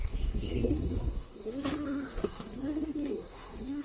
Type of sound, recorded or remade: remade